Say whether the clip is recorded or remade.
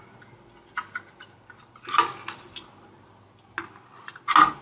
recorded